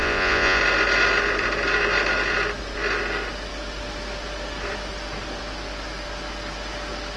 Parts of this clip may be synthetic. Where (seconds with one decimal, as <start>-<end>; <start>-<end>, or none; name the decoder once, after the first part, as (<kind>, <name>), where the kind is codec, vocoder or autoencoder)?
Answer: 0.0-0.6 (vocoder, Vocos)

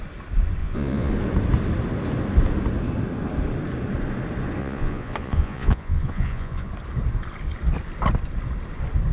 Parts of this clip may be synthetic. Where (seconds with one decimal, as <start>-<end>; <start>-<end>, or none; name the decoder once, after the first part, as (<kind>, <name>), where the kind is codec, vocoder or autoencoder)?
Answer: 0.6-1.1 (vocoder, Vocos); 4.6-6.7

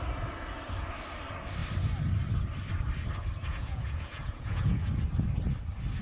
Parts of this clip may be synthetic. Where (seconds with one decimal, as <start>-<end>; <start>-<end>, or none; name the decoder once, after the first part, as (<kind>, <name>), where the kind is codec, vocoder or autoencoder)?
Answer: 3.5-4.9 (vocoder, Vocos)

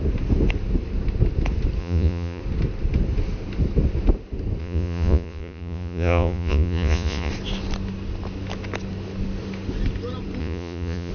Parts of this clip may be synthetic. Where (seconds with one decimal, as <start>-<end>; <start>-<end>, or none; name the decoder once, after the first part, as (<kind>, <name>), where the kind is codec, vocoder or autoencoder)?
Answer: 1.8-2.4 (vocoder, Vocos); 4.6-7.3; 10.4-11.1

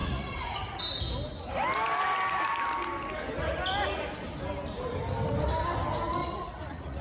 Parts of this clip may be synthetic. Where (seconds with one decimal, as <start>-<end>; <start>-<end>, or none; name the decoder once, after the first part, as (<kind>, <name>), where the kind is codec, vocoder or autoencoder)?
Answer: 0.0-0.8 (vocoder, Vocos); 6.2-7.0

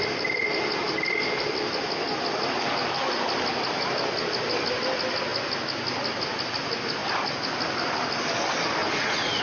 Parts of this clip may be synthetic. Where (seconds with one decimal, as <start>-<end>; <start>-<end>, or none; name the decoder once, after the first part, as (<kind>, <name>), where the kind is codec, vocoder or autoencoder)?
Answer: 8.8-9.4 (vocoder, Vocos)